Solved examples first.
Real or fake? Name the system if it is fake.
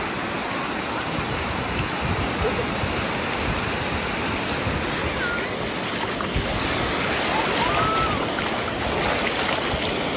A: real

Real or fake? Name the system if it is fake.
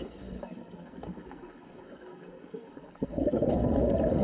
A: fake, codec, SNAC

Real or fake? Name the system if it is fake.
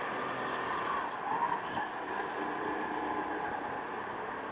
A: real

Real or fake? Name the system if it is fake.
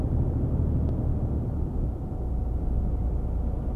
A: real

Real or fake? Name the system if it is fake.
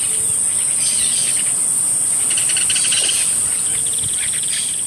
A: fake, vocoder, BigVGAN v2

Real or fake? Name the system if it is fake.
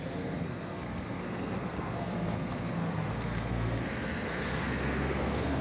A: fake, codec, SNAC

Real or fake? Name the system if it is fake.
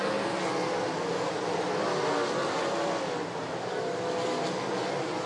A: real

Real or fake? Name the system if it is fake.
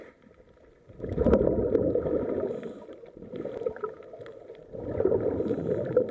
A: real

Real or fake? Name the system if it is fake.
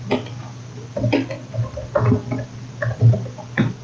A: real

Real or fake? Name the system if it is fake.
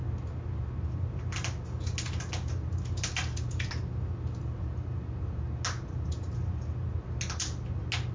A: real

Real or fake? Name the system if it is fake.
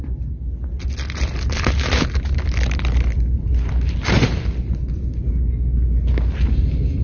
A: real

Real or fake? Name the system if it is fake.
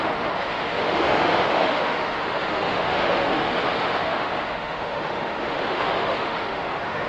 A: fake, autoencoder, DAC-VAE